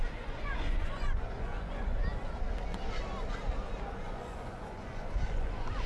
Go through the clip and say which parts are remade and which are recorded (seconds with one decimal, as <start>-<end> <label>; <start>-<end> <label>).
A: 0.0-2.0 remade; 2.0-4.0 recorded; 4.0-5.9 remade